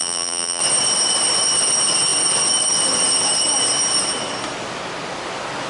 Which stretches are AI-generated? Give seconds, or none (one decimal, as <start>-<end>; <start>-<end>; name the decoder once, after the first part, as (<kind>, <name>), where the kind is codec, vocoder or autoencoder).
0.0-0.6 (vocoder, BigVGAN v2)